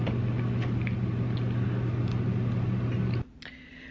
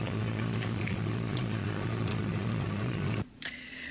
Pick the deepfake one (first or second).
second